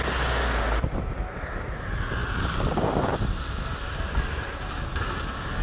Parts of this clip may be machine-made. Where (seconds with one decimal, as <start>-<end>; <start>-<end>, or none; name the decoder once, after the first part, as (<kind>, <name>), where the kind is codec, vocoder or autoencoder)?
none